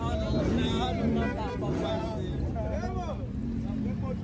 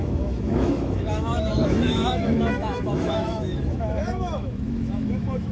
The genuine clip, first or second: first